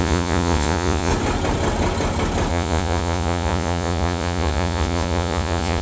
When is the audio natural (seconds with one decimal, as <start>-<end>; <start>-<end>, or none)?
1.1-2.5